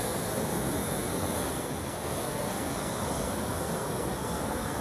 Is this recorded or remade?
remade